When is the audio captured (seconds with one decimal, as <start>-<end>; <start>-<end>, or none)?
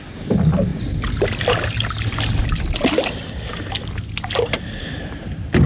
0.0-5.7